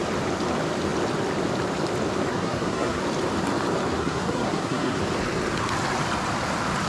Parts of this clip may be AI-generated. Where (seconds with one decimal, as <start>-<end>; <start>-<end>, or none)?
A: 2.3-3.0; 4.0-5.0

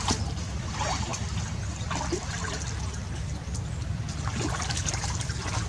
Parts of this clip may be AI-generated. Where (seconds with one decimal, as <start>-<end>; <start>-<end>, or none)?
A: none

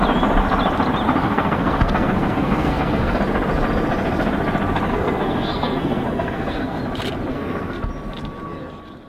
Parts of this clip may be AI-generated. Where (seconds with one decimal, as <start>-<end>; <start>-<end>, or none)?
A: 1.2-3.2; 4.9-6.8; 7.3-7.8

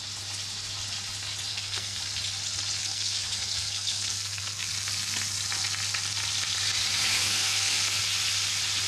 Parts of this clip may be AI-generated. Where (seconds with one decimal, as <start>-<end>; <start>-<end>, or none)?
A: 1.5-2.0; 2.8-4.7; 7.2-8.0

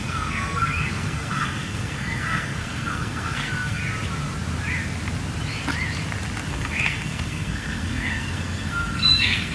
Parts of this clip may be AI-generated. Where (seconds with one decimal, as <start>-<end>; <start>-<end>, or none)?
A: 0.0-3.8; 6.5-9.5

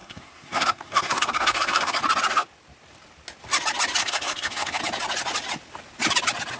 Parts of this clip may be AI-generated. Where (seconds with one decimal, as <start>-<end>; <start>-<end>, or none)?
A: 0.0-2.0; 4.0-4.8

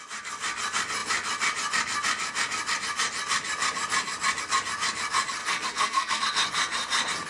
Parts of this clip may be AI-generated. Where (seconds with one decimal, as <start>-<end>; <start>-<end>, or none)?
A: 5.4-6.2

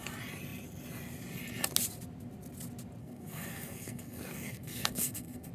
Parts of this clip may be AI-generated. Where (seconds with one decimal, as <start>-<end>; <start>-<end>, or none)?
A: 3.0-5.5